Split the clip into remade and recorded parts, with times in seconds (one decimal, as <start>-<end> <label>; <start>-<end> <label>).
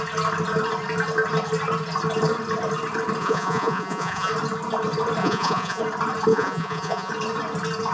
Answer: 0.0-3.2 recorded; 3.2-4.3 remade; 4.3-5.2 recorded; 5.2-5.8 remade; 5.8-6.3 recorded; 6.3-7.1 remade; 7.1-7.9 recorded